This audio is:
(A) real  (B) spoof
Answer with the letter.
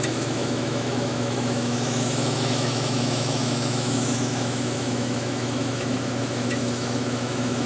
B